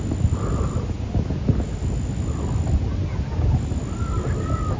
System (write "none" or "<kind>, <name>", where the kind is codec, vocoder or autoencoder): none